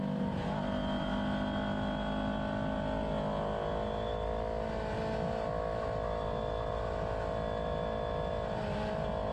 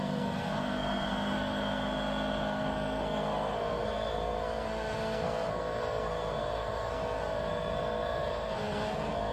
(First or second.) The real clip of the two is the first